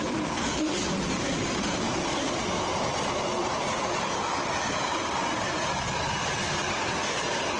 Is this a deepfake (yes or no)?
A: no